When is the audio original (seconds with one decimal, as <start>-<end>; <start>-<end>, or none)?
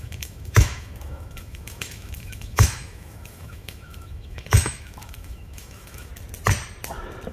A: 6.1-7.3